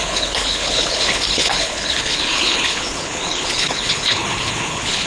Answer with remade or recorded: remade